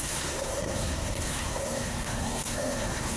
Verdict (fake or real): fake